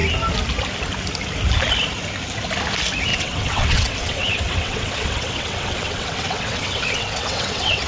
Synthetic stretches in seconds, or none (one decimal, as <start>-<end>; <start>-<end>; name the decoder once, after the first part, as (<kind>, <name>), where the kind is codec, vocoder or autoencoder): 3.1-7.9 (vocoder, WaveNeXt)